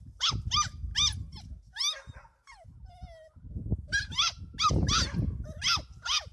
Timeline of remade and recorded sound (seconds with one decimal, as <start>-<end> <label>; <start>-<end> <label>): 0.0-6.3 recorded